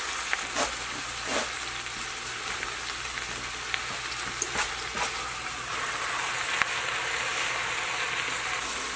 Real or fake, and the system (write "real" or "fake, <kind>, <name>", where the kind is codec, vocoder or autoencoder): real